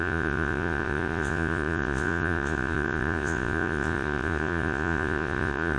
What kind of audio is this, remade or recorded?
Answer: remade